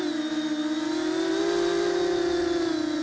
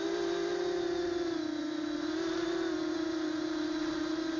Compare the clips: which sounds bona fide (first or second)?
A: first